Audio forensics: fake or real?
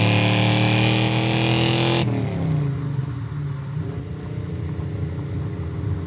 real